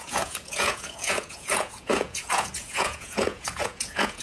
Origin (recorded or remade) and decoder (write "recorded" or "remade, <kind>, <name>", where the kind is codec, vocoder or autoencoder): remade, vocoder, Vocos